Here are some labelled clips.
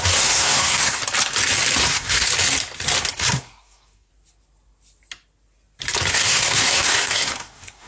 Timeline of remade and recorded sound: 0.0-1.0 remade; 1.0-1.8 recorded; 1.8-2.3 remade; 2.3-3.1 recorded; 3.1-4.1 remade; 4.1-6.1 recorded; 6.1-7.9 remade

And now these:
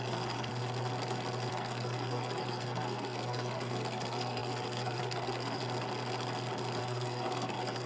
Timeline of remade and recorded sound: 0.0-0.5 remade; 0.5-1.5 recorded; 1.5-5.6 remade; 5.6-6.8 recorded; 6.8-7.9 remade

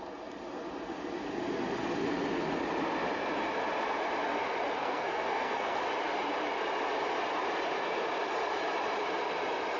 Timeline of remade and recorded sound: 0.0-4.8 recorded; 4.8-5.8 remade; 5.8-9.8 recorded

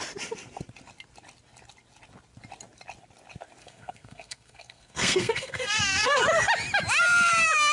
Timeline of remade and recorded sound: 0.0-3.6 recorded; 3.6-6.2 remade; 6.2-7.7 recorded

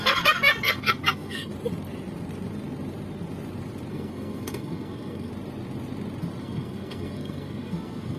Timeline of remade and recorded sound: 0.0-1.5 remade; 1.5-3.9 recorded; 3.9-5.3 remade; 5.3-6.4 recorded; 6.4-8.2 remade